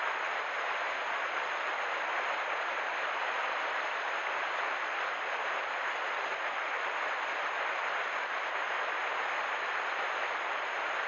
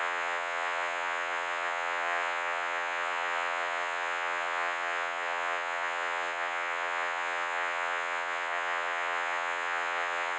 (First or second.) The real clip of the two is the first